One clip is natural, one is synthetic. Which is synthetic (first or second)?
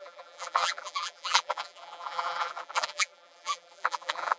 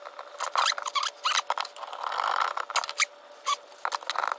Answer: first